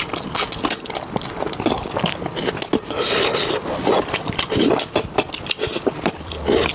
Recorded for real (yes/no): yes